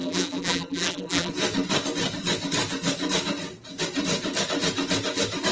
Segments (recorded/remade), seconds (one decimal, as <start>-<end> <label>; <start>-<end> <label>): 0.0-1.3 remade; 1.3-5.5 recorded